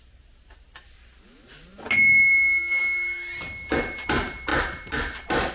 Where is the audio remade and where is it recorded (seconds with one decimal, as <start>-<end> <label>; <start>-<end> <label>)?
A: 0.0-5.5 recorded

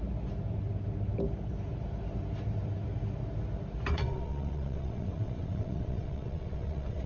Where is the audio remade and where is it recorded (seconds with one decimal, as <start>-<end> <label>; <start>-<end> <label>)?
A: 0.0-3.9 recorded; 3.9-7.1 remade

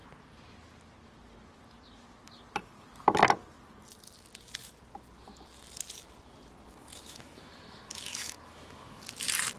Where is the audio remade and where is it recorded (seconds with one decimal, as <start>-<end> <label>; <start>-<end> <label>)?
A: 0.0-6.7 recorded; 6.7-9.1 remade; 9.1-9.6 recorded

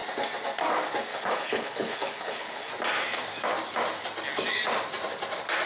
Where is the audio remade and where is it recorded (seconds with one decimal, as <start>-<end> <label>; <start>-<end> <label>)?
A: 0.0-1.1 recorded; 1.1-2.7 remade; 2.7-5.7 recorded

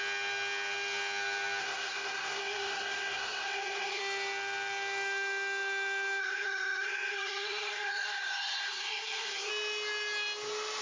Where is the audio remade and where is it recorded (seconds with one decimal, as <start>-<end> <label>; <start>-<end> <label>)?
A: 0.0-1.6 recorded; 1.6-4.0 remade; 4.0-6.2 recorded; 6.2-9.5 remade; 9.5-10.8 recorded

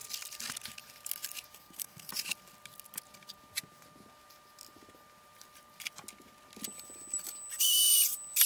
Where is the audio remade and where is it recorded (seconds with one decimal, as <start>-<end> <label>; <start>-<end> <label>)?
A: 0.0-1.5 recorded; 1.5-2.1 remade; 2.1-8.5 recorded

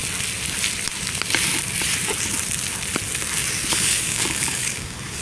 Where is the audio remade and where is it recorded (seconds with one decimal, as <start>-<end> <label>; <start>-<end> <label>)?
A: 0.0-3.7 recorded; 3.7-5.2 remade